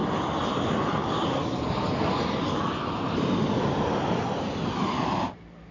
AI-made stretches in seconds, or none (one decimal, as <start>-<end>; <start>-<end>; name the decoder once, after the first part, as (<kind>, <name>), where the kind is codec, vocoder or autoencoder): none